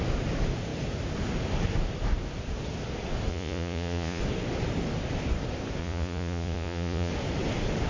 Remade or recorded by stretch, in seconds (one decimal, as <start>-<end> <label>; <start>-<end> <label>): 0.0-3.3 recorded; 3.3-4.2 remade; 4.2-5.8 recorded; 5.8-7.1 remade; 7.1-7.9 recorded